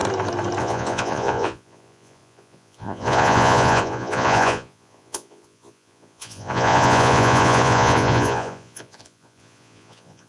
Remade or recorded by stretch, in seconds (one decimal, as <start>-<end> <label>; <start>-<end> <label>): 0.0-0.6 recorded; 0.6-10.3 remade